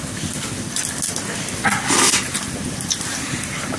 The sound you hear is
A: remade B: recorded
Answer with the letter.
B